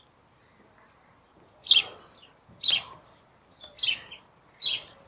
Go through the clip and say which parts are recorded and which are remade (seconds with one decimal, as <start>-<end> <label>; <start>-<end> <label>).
0.0-5.1 recorded